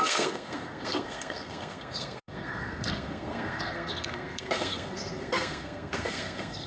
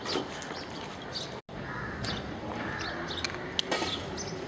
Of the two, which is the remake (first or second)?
first